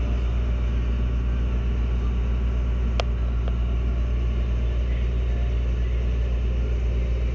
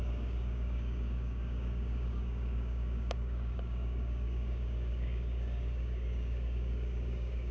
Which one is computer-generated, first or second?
second